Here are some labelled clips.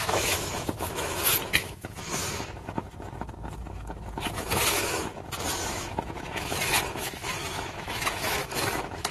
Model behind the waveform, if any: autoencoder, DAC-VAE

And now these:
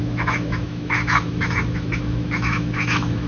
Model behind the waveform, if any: autoencoder, DAC-VAE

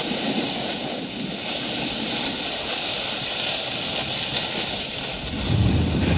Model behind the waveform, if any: none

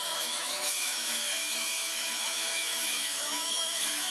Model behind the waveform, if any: autoencoder, DAC-VAE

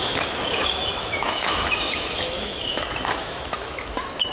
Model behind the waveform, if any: autoencoder, DAC-VAE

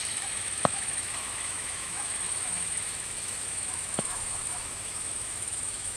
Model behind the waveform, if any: autoencoder, DAC-VAE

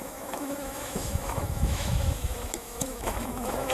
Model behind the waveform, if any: autoencoder, DAC-VAE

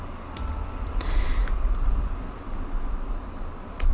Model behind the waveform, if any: none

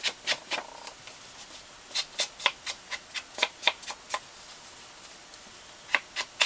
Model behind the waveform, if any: none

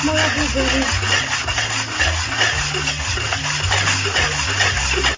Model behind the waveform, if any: none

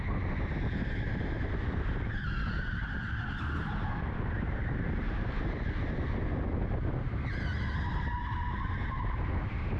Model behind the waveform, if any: none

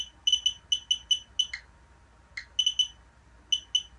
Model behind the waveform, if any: none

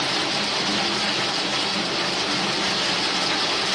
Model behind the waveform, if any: none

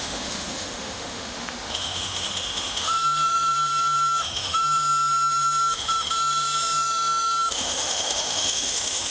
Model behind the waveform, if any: autoencoder, DAC-VAE